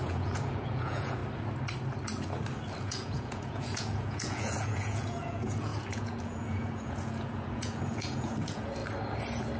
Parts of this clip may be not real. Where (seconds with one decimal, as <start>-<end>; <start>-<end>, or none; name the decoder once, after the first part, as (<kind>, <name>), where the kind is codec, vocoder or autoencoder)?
0.0-1.2 (vocoder, Vocos); 2.8-8.8